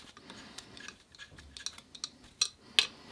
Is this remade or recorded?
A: recorded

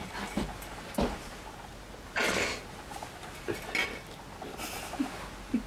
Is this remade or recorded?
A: recorded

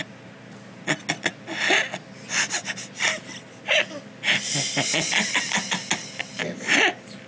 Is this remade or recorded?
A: recorded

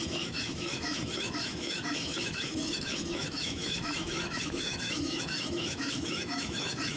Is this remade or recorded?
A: remade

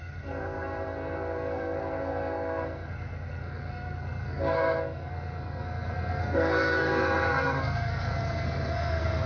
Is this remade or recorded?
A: remade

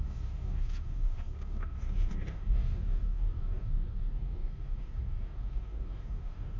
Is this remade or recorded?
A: remade